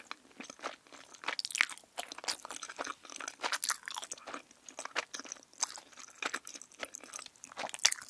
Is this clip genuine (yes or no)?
yes